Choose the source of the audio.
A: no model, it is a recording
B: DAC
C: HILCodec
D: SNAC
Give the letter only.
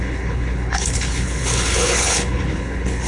C